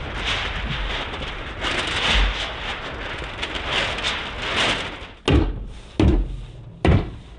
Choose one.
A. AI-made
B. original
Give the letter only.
B